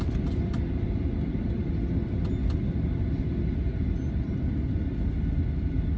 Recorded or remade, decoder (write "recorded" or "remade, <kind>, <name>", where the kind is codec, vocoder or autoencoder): recorded